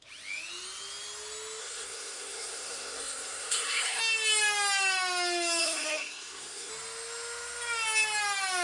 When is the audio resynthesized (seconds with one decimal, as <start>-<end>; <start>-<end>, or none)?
1.6-4.0; 5.6-6.7